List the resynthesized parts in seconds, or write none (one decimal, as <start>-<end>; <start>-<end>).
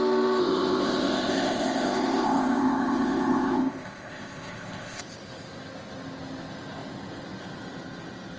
0.4-5.0